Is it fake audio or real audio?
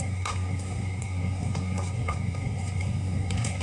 fake